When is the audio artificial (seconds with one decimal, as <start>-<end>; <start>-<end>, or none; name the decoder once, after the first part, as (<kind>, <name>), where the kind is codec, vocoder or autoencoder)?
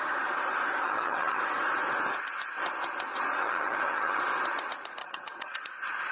0.8-1.4 (vocoder, HiFi-GAN); 3.4-4.2; 5.0-5.6